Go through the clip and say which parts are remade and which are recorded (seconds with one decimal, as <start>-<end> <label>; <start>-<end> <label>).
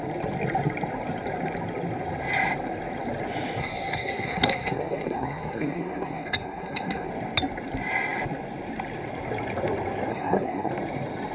0.0-3.6 recorded; 3.6-7.1 remade; 7.1-10.1 recorded; 10.1-10.7 remade; 10.7-11.3 recorded